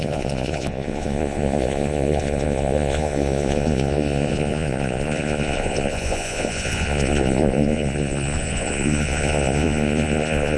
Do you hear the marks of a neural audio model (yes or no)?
yes